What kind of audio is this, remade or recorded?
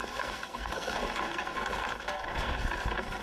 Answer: remade